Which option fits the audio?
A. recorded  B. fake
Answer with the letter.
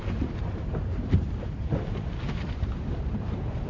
B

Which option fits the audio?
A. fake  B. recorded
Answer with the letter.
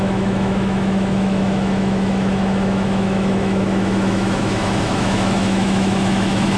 A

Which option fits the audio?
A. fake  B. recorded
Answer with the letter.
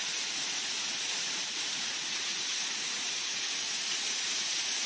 A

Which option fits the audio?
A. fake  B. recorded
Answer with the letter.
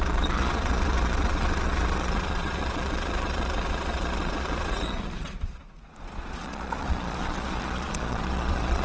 A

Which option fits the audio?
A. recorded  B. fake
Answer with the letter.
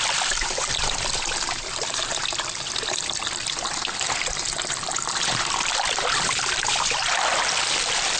B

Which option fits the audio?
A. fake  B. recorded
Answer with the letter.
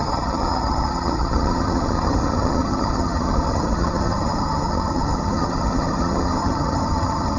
A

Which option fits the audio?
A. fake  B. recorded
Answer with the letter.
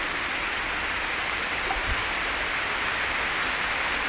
A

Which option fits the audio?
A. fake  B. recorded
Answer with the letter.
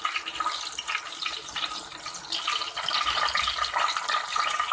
B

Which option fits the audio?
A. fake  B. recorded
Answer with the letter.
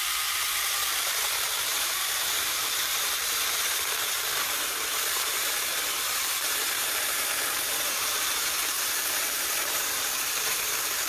A